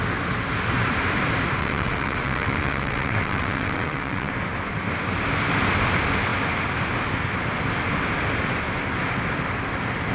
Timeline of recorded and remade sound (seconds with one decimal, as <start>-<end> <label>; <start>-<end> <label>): 0.0-1.6 recorded; 1.6-4.3 remade; 4.3-10.1 recorded